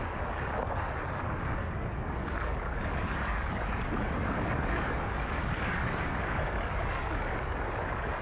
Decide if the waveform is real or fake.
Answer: fake